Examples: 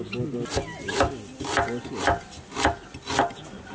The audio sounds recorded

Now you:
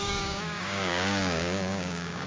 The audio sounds remade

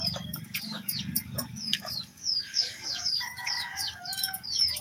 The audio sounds remade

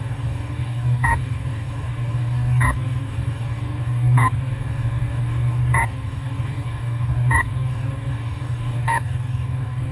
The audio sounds remade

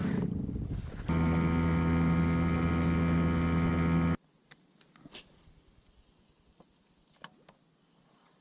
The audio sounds recorded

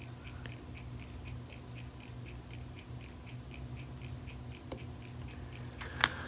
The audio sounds recorded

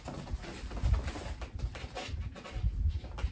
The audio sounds recorded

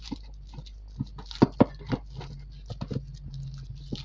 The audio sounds recorded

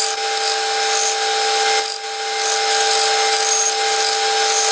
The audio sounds recorded